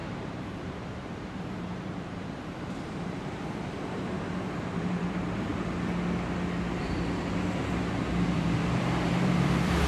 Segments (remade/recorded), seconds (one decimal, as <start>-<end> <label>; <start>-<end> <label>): 0.0-5.5 remade; 5.5-6.7 recorded; 6.7-9.9 remade